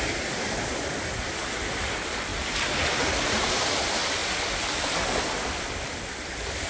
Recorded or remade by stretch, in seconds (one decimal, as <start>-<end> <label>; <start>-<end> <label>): 0.0-6.7 recorded